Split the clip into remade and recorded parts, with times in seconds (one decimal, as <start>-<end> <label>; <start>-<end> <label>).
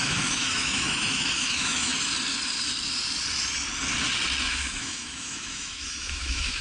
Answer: 0.0-1.9 remade; 1.9-4.4 recorded; 4.4-6.6 remade